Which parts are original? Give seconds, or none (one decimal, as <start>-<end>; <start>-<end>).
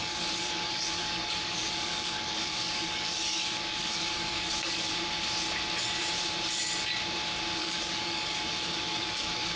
4.9-7.6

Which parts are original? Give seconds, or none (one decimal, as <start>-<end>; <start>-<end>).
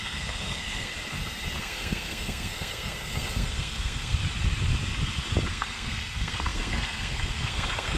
0.9-1.6; 4.2-5.5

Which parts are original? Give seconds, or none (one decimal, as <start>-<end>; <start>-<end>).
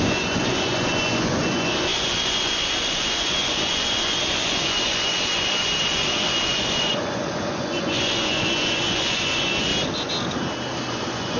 9.7-10.9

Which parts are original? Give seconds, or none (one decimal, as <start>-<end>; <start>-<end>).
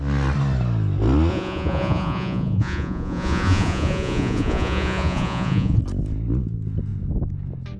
0.0-1.3; 5.8-7.8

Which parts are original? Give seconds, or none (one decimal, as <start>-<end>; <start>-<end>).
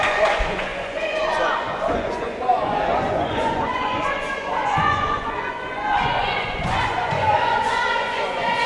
none